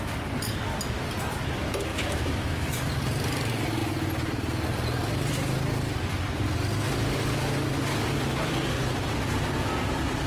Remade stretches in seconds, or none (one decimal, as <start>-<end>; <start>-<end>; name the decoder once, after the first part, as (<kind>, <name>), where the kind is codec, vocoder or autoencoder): 1.9-2.8 (autoencoder, DAC-VAE)